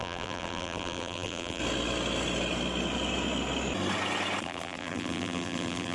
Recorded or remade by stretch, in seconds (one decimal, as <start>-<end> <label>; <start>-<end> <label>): 0.0-1.6 remade; 1.6-4.4 recorded; 4.4-5.9 remade